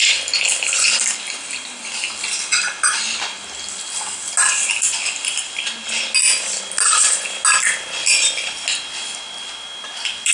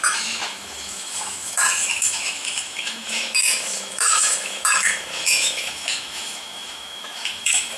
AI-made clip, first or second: second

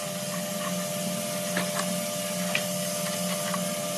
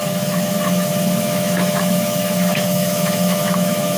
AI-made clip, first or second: second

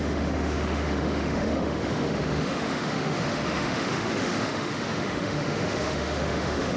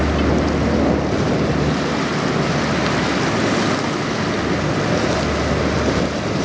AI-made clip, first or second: first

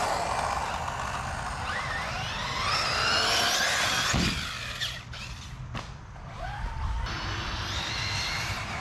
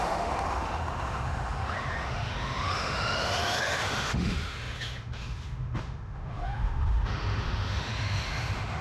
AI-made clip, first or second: second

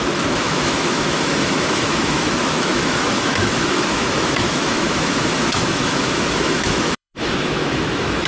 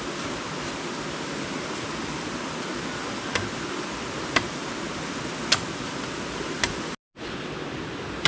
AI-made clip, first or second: first